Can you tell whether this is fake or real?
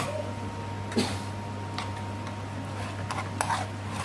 real